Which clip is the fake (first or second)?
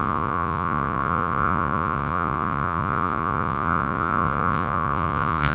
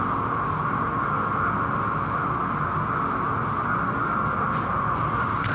first